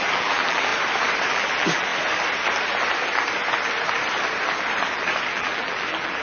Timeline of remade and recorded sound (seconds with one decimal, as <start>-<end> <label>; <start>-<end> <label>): 0.0-0.7 remade; 0.7-1.3 recorded; 1.3-1.9 remade; 1.9-5.3 recorded; 5.3-6.2 remade